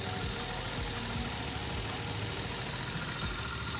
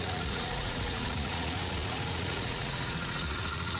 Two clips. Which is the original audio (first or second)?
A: first